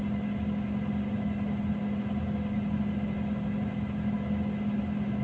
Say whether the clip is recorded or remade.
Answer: recorded